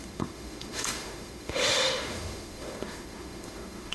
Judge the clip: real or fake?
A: fake